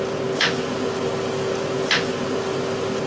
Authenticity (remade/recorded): recorded